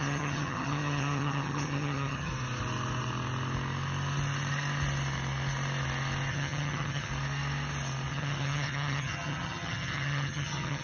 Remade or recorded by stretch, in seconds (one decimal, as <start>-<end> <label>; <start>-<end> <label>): 0.0-2.3 remade; 2.3-6.3 recorded; 6.3-7.1 remade; 7.1-8.1 recorded; 8.1-10.8 remade